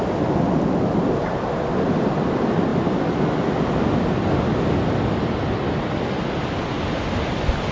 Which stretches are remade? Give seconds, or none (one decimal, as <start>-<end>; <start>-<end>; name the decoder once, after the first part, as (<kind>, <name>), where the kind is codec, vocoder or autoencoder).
none